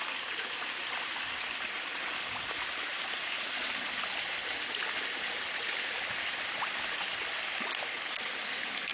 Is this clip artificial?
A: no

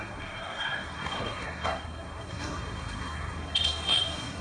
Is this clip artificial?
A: yes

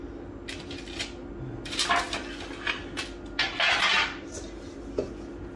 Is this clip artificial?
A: no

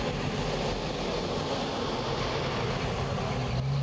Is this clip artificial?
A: no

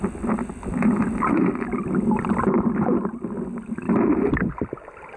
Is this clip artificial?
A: no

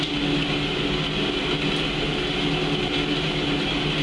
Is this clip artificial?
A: no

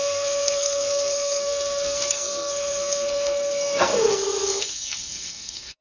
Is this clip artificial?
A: yes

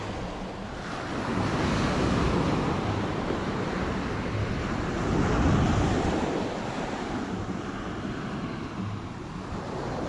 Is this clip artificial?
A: no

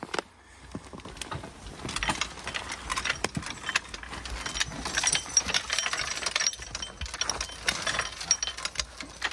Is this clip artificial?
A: no